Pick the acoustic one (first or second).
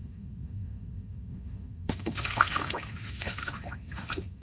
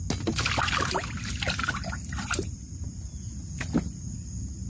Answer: second